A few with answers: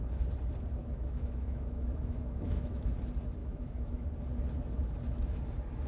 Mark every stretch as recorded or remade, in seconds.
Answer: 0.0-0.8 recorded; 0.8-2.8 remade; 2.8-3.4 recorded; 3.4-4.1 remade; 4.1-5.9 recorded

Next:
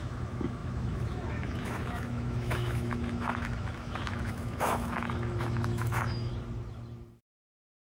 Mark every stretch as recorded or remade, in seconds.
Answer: 0.0-6.3 remade; 6.3-7.2 recorded; 7.2-8.0 remade